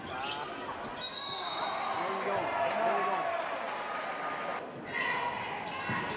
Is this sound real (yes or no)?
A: yes